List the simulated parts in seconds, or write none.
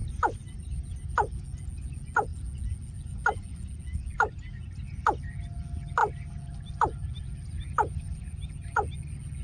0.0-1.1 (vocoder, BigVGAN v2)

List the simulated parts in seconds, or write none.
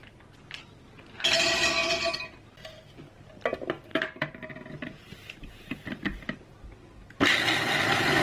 3.9-5.5 (vocoder, BigVGAN v2)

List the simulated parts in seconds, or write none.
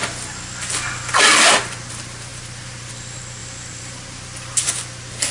2.3-2.9 (vocoder, BigVGAN v2); 3.4-4.7